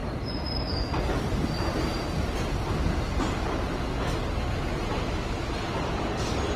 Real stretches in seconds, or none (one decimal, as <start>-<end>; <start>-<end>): 0.0-6.6